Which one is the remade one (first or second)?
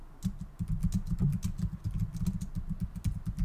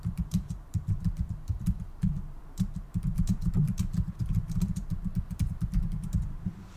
second